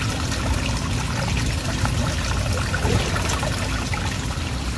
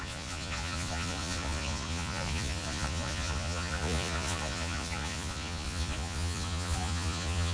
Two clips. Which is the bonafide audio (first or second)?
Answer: first